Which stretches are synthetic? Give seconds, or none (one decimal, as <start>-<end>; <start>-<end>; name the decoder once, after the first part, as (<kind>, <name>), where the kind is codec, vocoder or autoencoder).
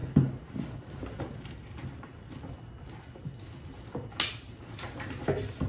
none